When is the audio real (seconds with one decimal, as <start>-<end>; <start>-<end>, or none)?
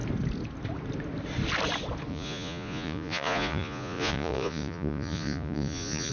0.0-2.1